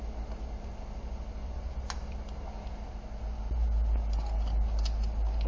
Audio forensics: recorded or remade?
recorded